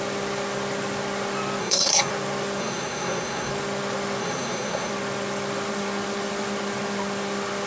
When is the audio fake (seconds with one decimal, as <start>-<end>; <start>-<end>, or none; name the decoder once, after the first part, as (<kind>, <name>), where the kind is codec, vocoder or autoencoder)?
1.6-2.1 (codec, SNAC); 2.6-3.5; 4.2-4.9